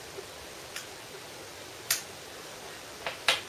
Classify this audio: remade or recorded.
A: recorded